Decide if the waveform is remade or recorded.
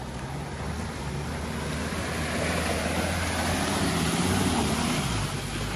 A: recorded